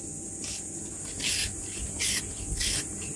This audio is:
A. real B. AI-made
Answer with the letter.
A